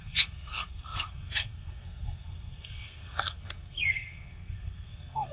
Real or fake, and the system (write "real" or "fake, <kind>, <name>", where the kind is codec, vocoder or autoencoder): fake, codec, SNAC